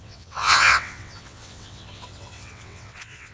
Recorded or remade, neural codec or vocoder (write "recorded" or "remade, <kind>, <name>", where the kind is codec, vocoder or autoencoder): remade, vocoder, WaveNeXt